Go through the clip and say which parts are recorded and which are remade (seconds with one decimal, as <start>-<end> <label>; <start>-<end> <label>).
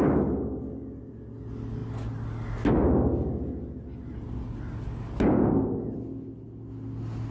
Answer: 0.0-7.3 recorded